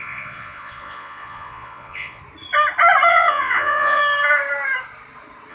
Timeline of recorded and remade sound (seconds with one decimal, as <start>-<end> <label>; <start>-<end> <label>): 0.0-2.2 remade; 2.2-3.1 recorded; 3.1-4.0 remade; 4.0-5.5 recorded